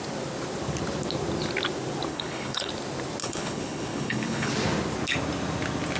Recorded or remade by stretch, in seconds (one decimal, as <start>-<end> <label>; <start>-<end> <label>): 0.0-2.1 recorded; 2.1-2.7 remade; 2.7-3.2 recorded; 3.2-4.5 remade; 4.5-6.0 recorded